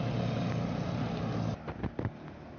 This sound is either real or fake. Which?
real